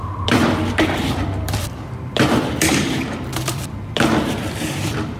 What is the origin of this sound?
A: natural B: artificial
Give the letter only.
B